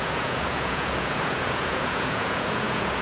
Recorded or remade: remade